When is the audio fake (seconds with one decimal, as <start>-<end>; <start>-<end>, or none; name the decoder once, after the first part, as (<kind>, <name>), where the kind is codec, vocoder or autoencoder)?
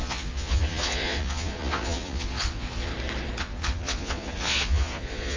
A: 0.0-2.9 (vocoder, Vocos); 3.4-5.4